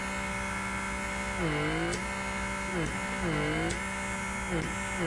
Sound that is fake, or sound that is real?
real